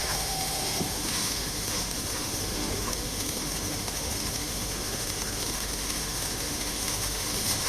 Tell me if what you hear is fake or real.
fake